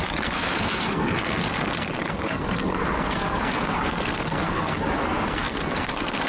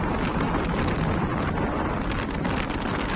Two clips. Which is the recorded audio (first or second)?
second